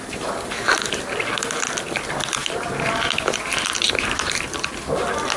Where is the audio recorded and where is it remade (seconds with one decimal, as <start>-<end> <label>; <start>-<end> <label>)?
0.0-2.4 recorded; 2.4-4.7 remade; 4.7-5.4 recorded